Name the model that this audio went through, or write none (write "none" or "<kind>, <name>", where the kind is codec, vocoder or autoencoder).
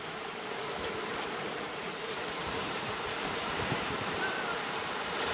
vocoder, BigVGAN v2